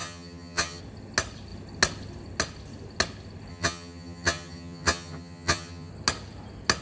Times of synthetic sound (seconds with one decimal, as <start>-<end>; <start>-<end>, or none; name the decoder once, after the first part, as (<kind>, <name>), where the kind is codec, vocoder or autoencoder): 0.0-0.8 (vocoder, HiFi-GAN); 3.5-5.9